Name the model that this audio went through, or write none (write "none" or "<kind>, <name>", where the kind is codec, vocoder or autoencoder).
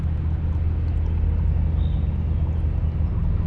none